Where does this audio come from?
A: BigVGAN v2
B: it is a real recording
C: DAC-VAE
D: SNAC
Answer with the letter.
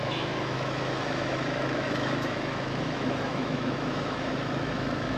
C